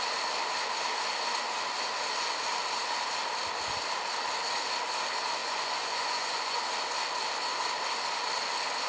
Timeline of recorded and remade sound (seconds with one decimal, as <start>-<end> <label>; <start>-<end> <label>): 0.0-5.4 recorded; 5.4-6.6 remade; 6.6-8.9 recorded